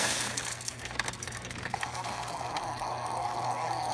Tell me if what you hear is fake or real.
fake